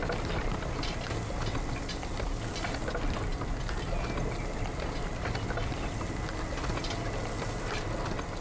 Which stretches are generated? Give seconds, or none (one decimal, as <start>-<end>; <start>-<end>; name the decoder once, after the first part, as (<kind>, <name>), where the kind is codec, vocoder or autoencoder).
none